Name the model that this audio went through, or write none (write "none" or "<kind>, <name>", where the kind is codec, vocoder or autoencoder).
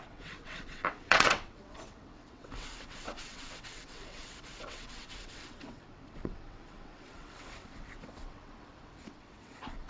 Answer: vocoder, WaveNeXt